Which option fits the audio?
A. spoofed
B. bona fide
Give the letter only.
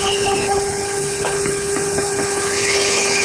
A